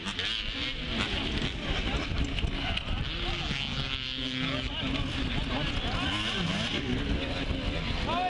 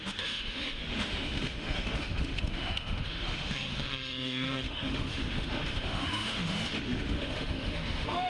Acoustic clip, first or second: first